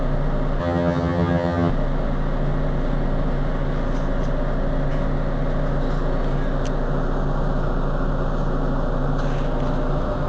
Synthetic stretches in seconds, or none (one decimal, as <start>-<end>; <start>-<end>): 0.6-1.7